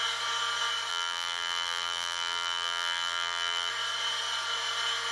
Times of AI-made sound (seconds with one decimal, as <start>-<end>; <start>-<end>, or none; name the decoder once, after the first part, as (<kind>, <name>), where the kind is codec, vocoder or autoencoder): 0.9-3.7 (vocoder, BigVGAN v2)